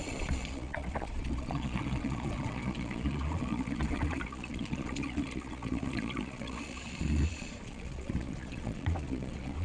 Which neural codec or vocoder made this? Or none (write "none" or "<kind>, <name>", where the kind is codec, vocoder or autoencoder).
vocoder, Vocos